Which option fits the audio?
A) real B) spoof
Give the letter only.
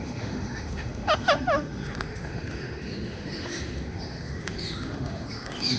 B